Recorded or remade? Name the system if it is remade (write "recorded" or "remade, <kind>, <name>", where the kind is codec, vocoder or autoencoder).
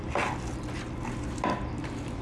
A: recorded